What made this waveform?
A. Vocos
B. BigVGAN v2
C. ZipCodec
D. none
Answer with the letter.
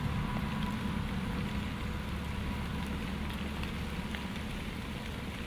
D